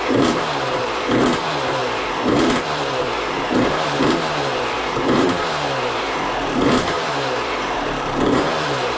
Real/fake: fake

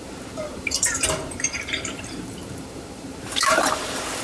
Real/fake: fake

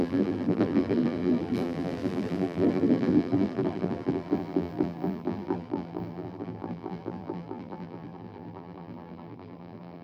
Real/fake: fake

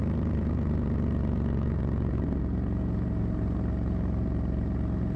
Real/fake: fake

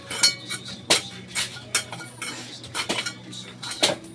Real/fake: real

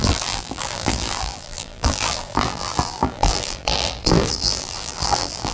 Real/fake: fake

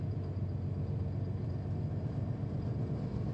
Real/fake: real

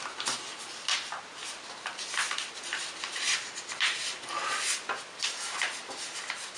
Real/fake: real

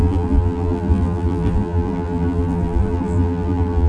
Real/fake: fake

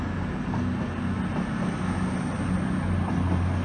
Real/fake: real